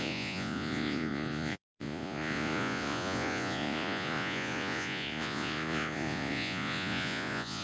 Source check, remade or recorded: remade